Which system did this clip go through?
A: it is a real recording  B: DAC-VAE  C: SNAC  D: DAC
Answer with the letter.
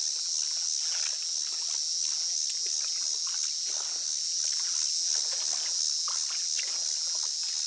A